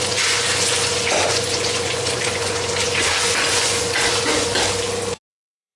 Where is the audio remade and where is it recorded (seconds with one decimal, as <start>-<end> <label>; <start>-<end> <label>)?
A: 0.0-4.5 remade; 4.5-5.3 recorded; 5.3-5.8 remade